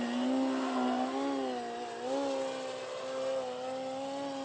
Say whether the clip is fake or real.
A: real